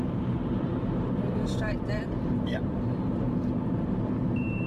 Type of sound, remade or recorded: remade